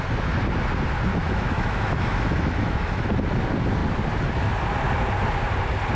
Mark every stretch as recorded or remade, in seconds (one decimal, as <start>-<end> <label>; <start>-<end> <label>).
0.0-1.1 recorded; 1.1-3.1 remade; 3.1-6.0 recorded